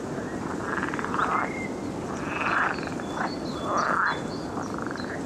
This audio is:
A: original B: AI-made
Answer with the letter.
A